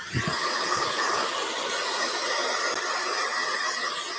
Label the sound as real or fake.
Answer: real